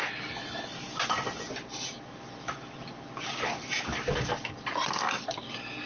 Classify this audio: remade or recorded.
recorded